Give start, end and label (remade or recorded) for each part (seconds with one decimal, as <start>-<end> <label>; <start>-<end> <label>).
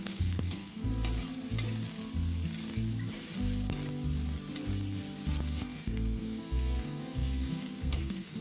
0.0-0.9 remade; 0.9-5.4 recorded; 5.4-8.4 remade